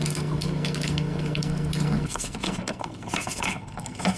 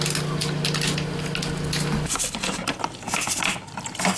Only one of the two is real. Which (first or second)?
second